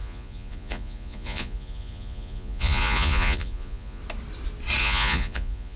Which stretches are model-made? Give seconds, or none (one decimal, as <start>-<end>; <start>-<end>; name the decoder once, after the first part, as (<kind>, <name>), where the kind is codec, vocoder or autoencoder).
0.0-4.0 (vocoder, Vocos); 4.8-5.8